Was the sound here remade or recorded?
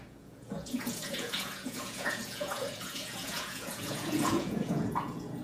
remade